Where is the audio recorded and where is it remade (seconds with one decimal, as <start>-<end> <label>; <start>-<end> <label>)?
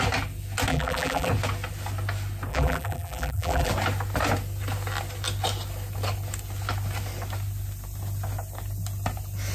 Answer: 0.0-0.7 recorded; 0.7-1.3 remade; 1.3-2.5 recorded; 2.5-3.7 remade; 3.7-9.5 recorded